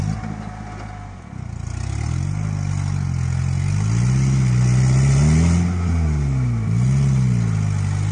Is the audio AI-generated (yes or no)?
no